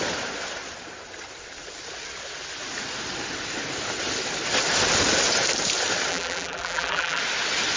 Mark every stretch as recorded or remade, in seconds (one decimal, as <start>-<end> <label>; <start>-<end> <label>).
0.0-6.1 recorded; 6.1-7.2 remade; 7.2-7.8 recorded